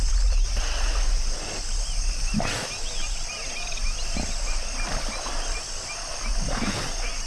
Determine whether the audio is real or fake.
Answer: real